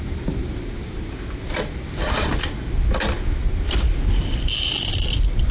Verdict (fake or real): real